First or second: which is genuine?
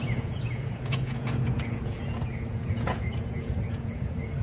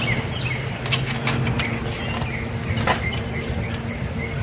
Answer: second